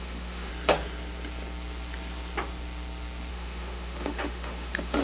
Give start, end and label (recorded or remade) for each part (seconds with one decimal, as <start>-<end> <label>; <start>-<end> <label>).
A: 0.0-0.5 remade; 0.5-3.3 recorded; 3.3-5.0 remade